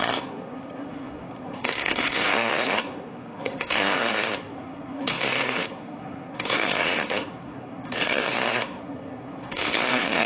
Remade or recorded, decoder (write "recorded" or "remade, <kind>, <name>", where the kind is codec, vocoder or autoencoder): remade, codec, SNAC